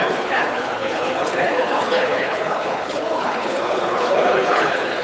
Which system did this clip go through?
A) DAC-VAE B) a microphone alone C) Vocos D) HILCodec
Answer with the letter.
D